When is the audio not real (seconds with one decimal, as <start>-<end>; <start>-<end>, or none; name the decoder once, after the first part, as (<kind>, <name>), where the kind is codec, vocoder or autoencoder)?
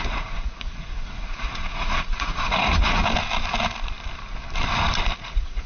0.0-3.0 (vocoder, Vocos); 5.2-5.7